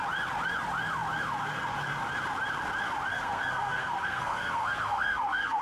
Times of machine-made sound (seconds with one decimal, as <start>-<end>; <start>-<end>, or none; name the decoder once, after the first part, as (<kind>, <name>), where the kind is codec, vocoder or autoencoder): 3.1-5.6 (codec, SNAC)